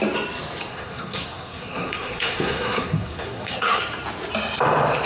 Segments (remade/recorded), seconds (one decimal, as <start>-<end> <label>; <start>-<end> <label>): 0.0-0.7 recorded; 0.7-3.8 remade; 3.8-5.1 recorded